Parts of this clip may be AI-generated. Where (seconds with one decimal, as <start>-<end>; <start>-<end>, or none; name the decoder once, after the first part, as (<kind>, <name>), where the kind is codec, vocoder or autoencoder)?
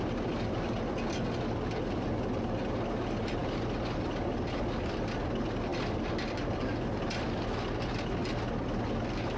none